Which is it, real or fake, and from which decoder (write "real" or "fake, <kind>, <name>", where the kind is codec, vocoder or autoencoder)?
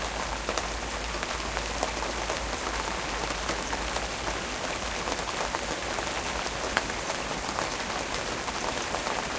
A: real